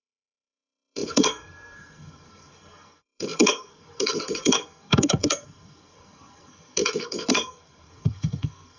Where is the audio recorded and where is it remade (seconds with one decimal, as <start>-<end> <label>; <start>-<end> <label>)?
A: 0.0-8.8 remade